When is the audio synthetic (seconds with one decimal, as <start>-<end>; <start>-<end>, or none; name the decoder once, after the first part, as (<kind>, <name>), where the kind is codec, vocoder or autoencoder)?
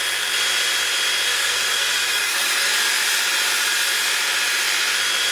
1.3-2.7 (codec, SNAC)